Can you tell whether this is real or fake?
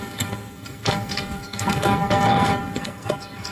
fake